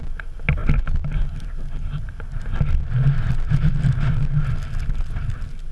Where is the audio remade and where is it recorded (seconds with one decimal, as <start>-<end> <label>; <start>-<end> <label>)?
0.0-5.7 recorded